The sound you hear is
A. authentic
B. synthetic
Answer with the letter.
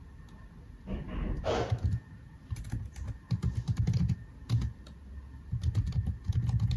A